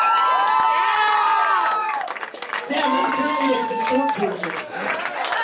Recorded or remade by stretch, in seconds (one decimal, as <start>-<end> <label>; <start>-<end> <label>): 0.0-1.8 recorded; 1.8-5.0 remade; 5.0-5.4 recorded

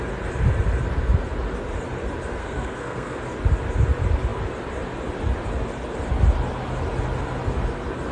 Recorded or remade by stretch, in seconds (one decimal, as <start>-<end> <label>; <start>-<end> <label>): 0.0-2.4 recorded; 2.4-3.2 remade; 3.2-8.1 recorded

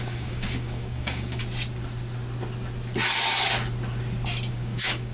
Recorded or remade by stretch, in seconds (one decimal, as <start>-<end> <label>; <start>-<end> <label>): 0.0-1.4 remade; 1.4-4.5 recorded; 4.5-5.1 remade

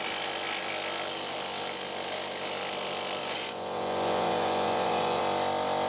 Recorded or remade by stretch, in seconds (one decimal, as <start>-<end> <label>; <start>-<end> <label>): 0.0-3.2 recorded; 3.2-5.2 remade; 5.2-5.9 recorded

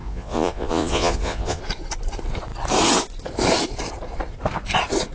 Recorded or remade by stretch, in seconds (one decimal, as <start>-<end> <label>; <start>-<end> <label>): 0.0-1.6 remade; 1.6-5.1 recorded